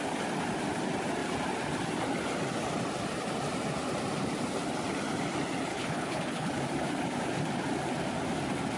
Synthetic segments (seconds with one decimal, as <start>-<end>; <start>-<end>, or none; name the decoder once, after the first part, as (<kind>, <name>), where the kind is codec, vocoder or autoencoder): 5.7-6.5 (codec, HILCodec)